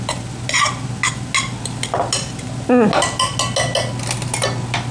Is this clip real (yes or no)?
yes